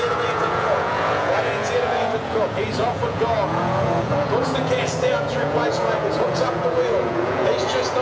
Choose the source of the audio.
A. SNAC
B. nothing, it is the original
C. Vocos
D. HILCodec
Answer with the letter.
C